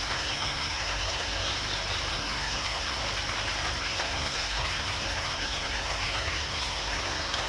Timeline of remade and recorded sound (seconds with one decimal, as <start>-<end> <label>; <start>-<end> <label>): 0.0-1.5 remade; 1.5-2.1 recorded; 2.1-3.0 remade; 3.0-3.8 recorded; 3.8-7.5 remade